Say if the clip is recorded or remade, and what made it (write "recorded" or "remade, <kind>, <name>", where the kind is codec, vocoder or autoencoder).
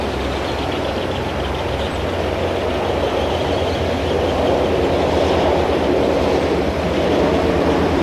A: recorded